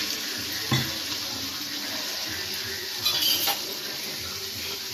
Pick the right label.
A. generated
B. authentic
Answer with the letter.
B